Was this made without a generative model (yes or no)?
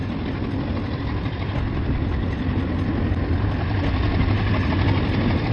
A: yes